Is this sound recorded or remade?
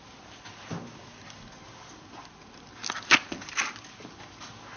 recorded